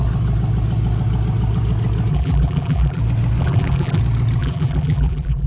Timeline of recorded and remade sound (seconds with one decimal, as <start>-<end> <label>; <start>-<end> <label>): 0.0-2.1 recorded; 2.1-3.0 remade; 3.0-3.4 recorded; 3.4-4.0 remade; 4.0-4.4 recorded; 4.4-5.5 remade